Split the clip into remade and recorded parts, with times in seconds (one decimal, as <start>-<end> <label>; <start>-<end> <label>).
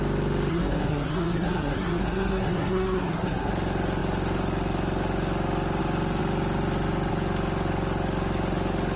0.0-0.5 recorded; 0.5-3.5 remade; 3.5-9.0 recorded